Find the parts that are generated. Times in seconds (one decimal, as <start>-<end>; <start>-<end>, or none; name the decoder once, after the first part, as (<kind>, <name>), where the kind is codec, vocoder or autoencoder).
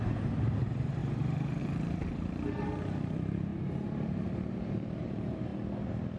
0.0-5.5 (vocoder, BigVGAN v2)